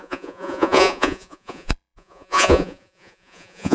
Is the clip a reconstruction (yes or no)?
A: yes